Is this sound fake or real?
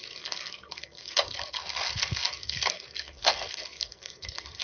fake